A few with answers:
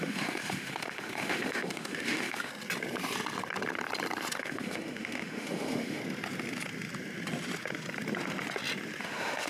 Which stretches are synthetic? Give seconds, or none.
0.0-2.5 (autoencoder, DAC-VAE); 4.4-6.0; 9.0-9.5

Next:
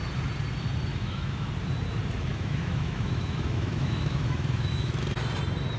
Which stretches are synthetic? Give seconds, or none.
0.9-1.5 (autoencoder, DAC-VAE); 2.3-5.0